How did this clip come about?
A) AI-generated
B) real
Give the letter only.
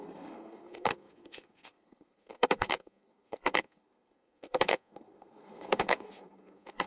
A